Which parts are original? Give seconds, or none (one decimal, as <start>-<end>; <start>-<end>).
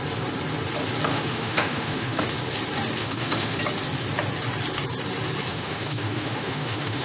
0.0-1.1; 2.2-3.0; 3.6-5.5